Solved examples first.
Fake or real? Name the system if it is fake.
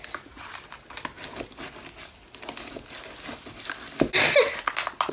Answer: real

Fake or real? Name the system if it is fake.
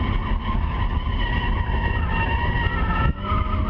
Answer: real